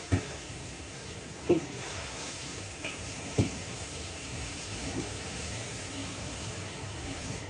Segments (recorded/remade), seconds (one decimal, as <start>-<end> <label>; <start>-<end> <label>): 0.0-7.5 remade